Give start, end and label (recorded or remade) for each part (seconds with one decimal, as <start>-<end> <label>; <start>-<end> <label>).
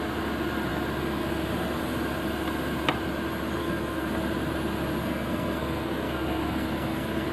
0.0-3.6 recorded; 3.6-4.1 remade; 4.1-5.0 recorded; 5.0-7.3 remade